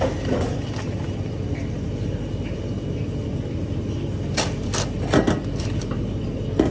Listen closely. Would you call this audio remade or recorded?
recorded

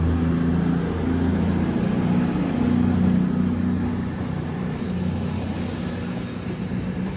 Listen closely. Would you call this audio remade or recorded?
recorded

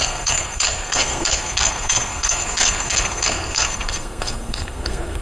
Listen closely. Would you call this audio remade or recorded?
remade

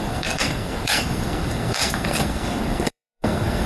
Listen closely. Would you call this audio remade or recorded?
remade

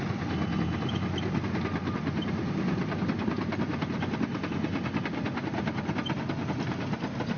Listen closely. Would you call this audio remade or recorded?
recorded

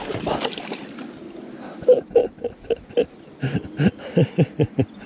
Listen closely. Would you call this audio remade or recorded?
recorded